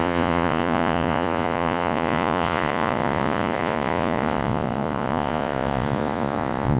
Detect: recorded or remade remade